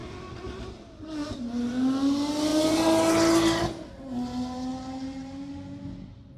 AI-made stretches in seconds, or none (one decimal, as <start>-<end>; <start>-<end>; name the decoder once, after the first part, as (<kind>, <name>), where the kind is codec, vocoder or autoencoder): 2.5-3.9 (vocoder, BigVGAN v2); 4.7-5.8